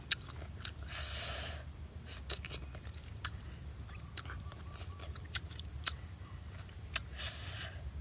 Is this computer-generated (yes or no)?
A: no